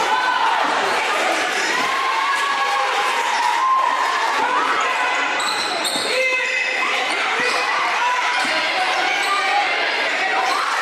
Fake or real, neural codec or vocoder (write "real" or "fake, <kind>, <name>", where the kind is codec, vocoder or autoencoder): fake, vocoder, BigVGAN v2